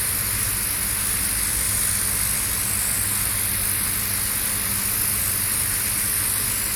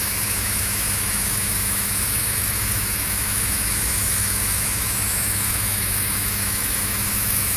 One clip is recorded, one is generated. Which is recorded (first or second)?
first